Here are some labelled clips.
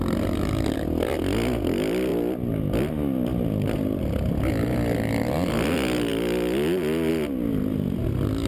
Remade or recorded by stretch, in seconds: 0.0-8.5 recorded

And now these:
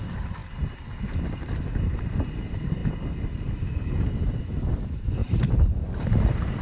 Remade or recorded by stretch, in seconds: 0.0-5.2 recorded; 5.2-6.6 remade

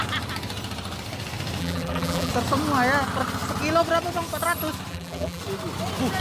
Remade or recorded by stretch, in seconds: 0.0-1.6 recorded; 1.6-2.3 remade; 2.3-4.9 recorded; 4.9-5.4 remade; 5.4-6.2 recorded

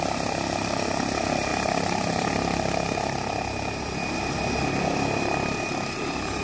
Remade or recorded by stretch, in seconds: 0.0-1.5 recorded; 1.5-2.3 remade; 2.3-6.4 recorded

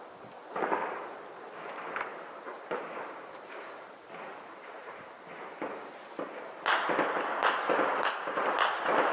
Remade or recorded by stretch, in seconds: 0.0-2.1 recorded; 2.1-5.5 remade; 5.5-9.1 recorded